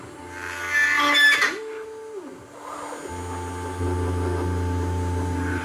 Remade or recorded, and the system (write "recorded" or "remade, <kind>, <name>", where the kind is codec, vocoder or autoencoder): recorded